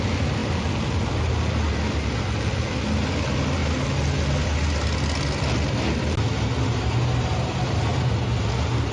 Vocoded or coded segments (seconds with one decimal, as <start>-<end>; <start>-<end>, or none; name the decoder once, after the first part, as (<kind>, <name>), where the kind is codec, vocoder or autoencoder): none